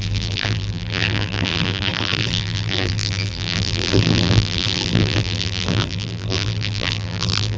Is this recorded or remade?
remade